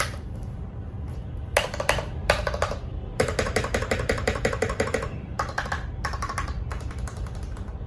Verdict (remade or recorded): remade